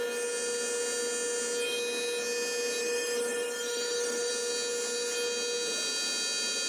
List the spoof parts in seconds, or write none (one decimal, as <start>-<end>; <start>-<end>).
2.8-4.3

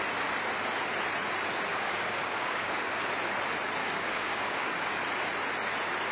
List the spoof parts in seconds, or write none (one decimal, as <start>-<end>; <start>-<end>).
1.7-3.0; 3.8-4.9

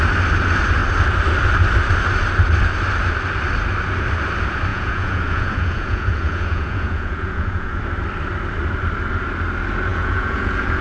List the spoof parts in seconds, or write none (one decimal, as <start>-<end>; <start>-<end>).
4.7-7.8; 9.9-10.8